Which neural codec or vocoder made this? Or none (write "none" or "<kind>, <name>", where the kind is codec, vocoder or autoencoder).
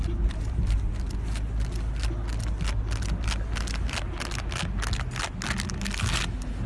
none